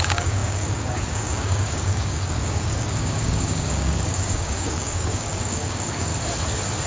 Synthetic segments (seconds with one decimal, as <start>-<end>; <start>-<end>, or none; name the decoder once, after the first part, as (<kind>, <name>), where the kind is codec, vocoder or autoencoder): 0.0-6.1 (codec, DAC)